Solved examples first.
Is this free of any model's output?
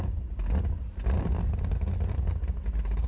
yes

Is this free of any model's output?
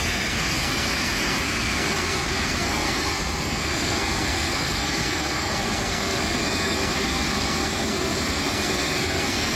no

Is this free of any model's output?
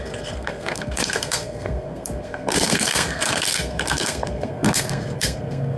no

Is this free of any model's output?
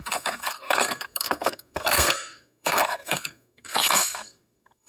no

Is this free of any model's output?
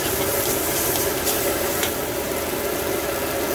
yes